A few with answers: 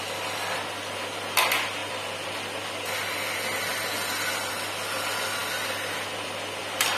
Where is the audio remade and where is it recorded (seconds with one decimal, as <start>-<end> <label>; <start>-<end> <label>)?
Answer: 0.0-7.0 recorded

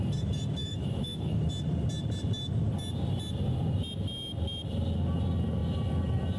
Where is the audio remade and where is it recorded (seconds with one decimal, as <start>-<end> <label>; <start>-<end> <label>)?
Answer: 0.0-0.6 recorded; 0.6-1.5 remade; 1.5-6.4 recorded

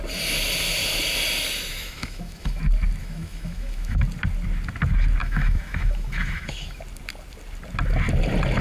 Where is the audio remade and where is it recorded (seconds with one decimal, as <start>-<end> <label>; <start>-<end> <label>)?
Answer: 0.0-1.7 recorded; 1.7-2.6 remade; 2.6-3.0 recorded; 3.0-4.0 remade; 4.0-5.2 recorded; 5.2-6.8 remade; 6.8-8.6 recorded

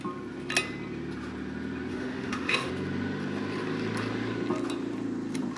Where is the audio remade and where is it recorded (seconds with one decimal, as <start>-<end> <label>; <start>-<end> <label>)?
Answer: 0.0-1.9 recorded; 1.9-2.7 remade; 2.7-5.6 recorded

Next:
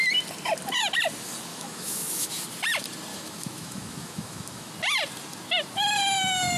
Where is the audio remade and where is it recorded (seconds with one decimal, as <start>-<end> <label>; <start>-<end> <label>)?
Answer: 0.0-1.5 recorded; 1.5-2.3 remade; 2.3-3.1 recorded; 3.1-4.7 remade; 4.7-6.6 recorded